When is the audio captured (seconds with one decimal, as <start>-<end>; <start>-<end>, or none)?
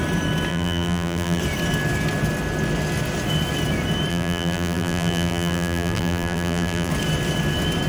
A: 0.0-0.5; 1.4-4.1; 6.9-7.9